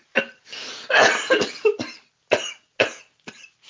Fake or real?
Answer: real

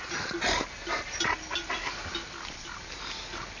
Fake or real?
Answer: real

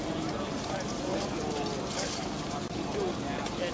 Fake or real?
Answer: real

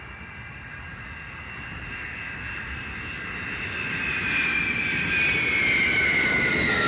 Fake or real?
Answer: real